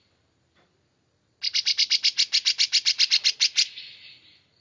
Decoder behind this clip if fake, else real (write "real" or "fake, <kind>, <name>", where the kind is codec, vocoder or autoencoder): real